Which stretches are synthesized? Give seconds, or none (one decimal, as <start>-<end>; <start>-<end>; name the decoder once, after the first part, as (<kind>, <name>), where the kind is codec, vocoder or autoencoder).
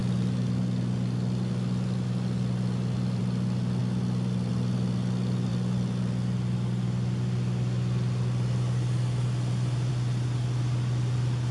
none